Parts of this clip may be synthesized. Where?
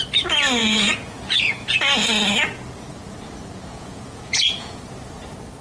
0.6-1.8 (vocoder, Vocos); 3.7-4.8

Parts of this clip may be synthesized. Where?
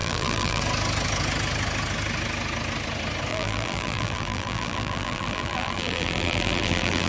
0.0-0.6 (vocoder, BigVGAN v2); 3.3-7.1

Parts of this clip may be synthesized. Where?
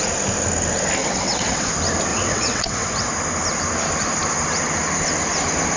1.0-1.7 (vocoder, WaveNeXt); 2.1-3.1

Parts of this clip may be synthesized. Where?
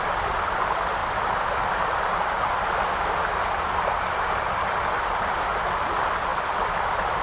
none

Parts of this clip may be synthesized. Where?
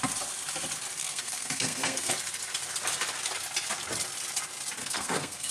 1.0-2.1 (codec, SNAC); 4.8-5.5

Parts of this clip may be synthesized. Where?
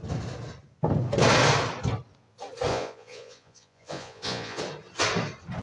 2.7-4.6 (vocoder, Vocos)